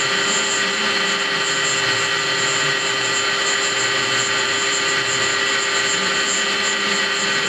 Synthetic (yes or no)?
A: no